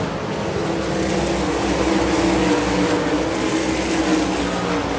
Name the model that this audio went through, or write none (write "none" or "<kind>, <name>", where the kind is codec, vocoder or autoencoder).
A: none